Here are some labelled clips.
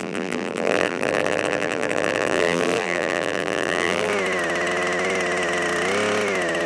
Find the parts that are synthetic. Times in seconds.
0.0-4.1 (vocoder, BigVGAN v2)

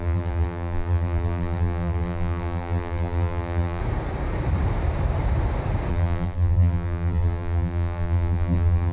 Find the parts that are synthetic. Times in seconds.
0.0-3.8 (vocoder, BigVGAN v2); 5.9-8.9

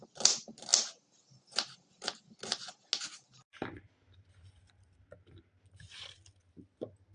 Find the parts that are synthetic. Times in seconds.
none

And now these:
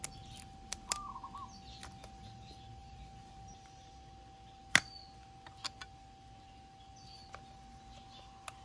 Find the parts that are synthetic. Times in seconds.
2.8-4.0 (vocoder, BigVGAN v2)

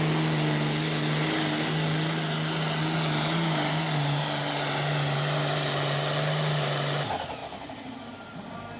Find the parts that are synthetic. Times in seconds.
none